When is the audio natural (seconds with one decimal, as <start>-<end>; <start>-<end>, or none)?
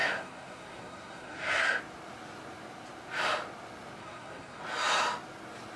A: 1.8-4.0; 4.6-5.8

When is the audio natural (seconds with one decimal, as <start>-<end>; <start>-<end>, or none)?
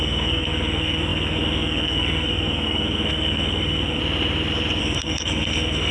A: 4.0-4.8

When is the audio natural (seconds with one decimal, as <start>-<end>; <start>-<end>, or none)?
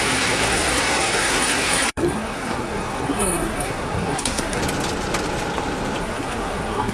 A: 4.6-6.0